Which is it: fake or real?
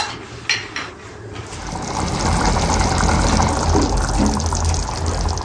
real